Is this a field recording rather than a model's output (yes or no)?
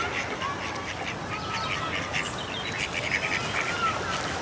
yes